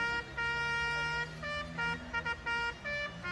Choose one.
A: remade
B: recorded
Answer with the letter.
B